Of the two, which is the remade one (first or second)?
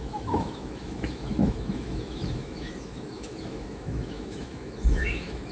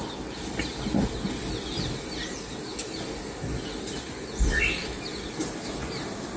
first